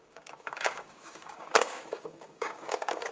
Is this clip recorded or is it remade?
remade